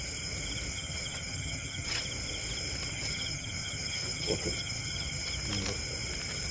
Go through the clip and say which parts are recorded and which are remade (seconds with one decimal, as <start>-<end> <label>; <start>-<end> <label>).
0.0-0.7 recorded; 0.7-2.0 remade; 2.0-2.9 recorded; 2.9-5.3 remade; 5.3-6.5 recorded